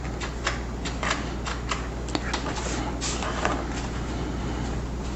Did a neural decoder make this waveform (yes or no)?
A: no